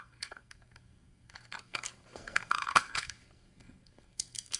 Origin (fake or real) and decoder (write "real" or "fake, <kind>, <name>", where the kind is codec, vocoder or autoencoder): fake, codec, SNAC